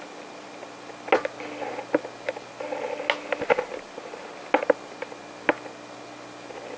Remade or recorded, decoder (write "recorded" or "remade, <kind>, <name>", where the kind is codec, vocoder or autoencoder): recorded